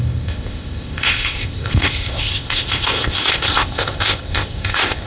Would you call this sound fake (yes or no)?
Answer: yes